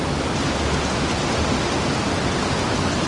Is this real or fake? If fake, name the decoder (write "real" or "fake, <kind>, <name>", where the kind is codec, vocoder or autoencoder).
real